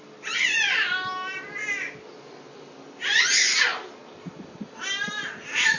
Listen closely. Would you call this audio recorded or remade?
recorded